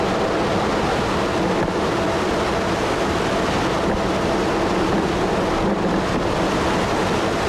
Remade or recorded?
recorded